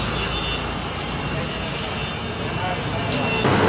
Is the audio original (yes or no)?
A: yes